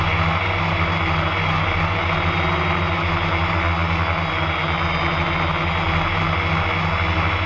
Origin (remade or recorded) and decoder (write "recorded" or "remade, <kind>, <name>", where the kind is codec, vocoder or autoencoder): recorded